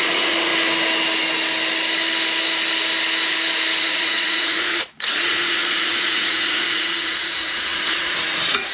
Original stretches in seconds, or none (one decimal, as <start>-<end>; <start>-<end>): 0.5-3.8